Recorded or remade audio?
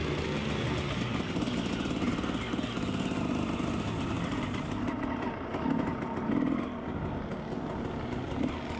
recorded